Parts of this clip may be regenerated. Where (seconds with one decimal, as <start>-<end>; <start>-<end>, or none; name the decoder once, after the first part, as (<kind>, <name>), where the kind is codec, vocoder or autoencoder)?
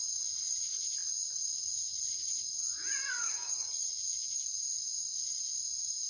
3.2-3.9 (codec, DAC)